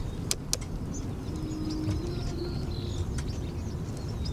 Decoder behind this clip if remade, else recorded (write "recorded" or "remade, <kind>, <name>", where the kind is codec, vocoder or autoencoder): recorded